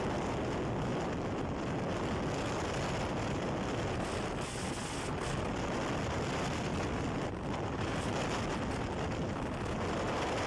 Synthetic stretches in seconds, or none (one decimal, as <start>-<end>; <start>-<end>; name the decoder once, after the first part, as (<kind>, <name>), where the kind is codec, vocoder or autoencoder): none

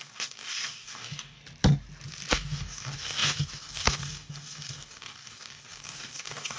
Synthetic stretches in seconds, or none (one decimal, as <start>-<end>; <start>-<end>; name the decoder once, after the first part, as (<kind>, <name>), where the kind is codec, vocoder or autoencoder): 0.0-1.4 (codec, DAC); 2.3-6.6

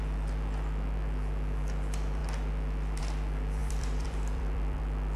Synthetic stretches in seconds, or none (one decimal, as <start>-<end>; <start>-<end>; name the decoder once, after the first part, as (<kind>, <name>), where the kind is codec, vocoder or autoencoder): 3.6-4.8 (vocoder, BigVGAN v2)

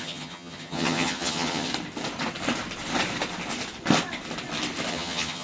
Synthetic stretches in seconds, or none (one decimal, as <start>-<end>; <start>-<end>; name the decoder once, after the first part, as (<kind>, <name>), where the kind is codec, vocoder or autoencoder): 0.0-1.7 (vocoder, HiFi-GAN); 4.9-5.4

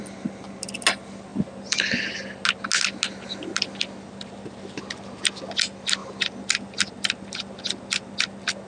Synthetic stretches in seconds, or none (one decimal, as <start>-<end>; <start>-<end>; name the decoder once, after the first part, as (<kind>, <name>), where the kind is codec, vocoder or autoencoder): none